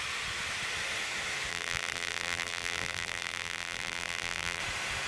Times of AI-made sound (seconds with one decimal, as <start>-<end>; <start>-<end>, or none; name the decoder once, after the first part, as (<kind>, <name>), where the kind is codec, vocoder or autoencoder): 1.5-4.6 (vocoder, BigVGAN v2)